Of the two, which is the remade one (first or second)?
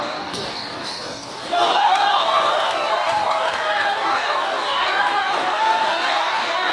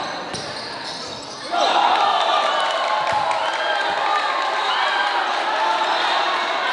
first